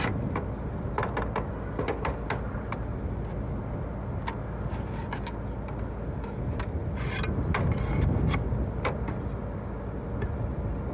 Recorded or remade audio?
recorded